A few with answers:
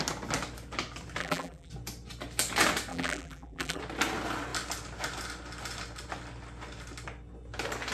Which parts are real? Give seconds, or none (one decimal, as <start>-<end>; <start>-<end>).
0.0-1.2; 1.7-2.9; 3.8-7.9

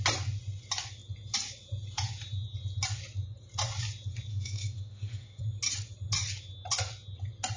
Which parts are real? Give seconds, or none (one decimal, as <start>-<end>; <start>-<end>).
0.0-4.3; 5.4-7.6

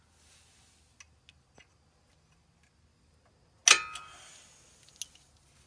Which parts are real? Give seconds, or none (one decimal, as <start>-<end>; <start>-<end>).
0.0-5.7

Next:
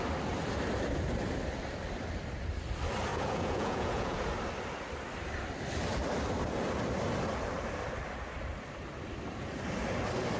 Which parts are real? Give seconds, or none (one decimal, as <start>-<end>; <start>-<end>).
0.0-3.1; 4.2-10.4

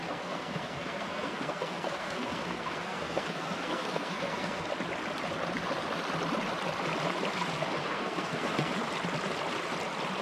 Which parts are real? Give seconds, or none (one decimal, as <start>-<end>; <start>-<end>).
4.7-7.8; 8.7-10.2

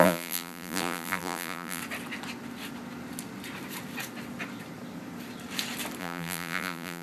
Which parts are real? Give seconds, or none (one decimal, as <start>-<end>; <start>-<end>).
1.8-6.0

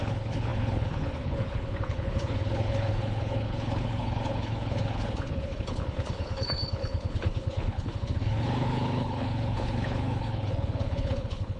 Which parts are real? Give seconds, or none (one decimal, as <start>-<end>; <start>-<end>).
none